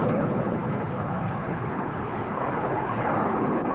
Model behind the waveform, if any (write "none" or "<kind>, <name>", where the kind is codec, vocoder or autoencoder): codec, HILCodec